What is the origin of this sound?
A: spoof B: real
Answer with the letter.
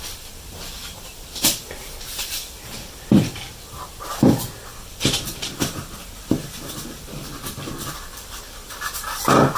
A